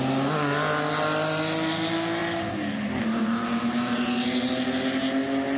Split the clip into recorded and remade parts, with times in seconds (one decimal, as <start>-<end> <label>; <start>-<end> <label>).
0.0-5.6 recorded